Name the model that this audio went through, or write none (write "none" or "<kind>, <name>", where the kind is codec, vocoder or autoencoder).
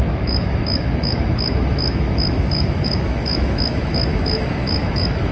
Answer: autoencoder, DAC-VAE